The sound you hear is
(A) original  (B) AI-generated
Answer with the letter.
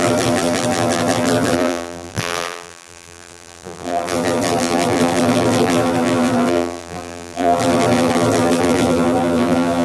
B